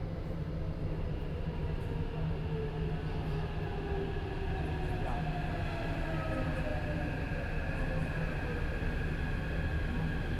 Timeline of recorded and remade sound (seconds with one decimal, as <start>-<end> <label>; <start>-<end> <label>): 0.0-8.0 recorded; 8.0-9.1 remade; 9.1-10.4 recorded